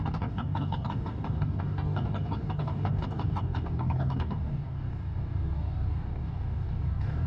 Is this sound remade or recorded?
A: remade